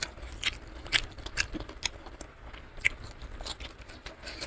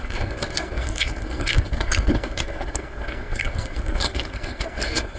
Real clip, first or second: first